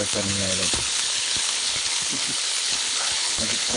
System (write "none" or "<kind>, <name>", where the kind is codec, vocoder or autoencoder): codec, HILCodec